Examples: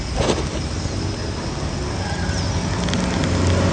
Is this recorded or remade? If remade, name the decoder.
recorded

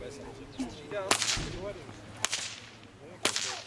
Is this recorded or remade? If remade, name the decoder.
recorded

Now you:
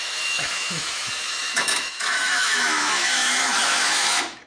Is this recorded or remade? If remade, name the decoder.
remade, autoencoder, DAC-VAE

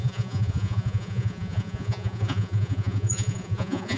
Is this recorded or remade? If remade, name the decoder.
remade, vocoder, Vocos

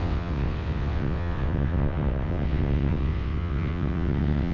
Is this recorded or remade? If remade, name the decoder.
remade, vocoder, WaveNeXt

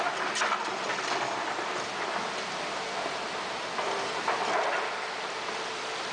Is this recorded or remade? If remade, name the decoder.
recorded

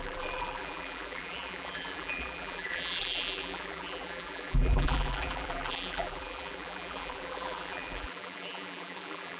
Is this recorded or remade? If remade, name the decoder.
remade, vocoder, BigVGAN v2